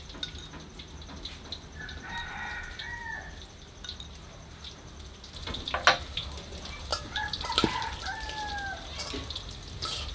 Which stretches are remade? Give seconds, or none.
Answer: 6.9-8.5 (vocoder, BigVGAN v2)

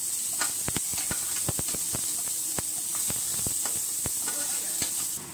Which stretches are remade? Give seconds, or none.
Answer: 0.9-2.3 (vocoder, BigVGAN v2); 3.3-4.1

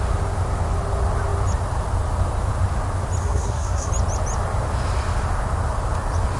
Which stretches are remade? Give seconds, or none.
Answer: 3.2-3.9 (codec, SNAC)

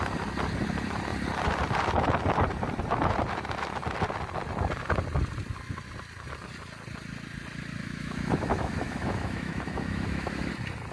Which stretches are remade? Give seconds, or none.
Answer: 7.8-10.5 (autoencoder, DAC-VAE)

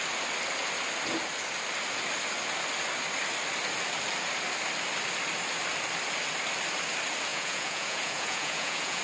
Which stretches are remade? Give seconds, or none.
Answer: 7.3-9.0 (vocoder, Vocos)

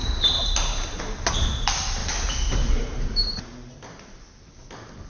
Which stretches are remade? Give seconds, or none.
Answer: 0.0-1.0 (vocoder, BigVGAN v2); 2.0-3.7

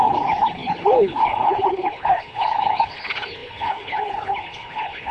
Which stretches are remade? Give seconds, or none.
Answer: 0.0-5.1 (codec, HILCodec)